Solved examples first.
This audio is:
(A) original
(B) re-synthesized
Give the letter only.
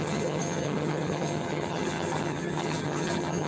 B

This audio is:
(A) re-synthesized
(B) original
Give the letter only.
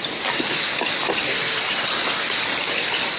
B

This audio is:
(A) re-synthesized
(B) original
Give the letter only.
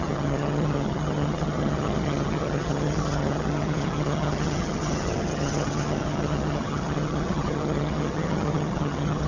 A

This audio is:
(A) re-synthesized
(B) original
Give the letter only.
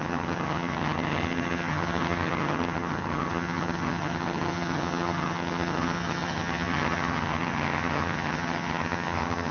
A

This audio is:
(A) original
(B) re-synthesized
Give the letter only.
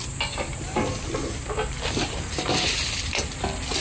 A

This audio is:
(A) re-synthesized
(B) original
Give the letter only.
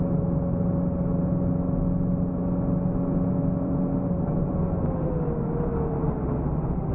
B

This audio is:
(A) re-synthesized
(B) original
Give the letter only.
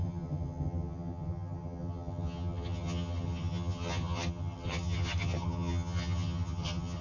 A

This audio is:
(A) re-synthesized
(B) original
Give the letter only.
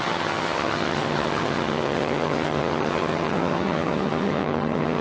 A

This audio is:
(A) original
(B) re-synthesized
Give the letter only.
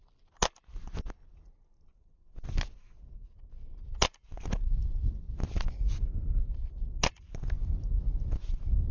A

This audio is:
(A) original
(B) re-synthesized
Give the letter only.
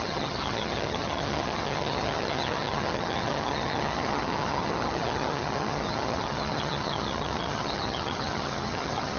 B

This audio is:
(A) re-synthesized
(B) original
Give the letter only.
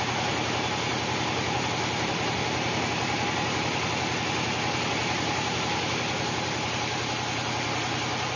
B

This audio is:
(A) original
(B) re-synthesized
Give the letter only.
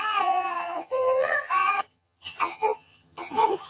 B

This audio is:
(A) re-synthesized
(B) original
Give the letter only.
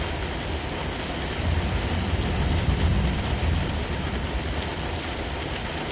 B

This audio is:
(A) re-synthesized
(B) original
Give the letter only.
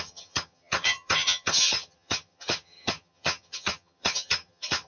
A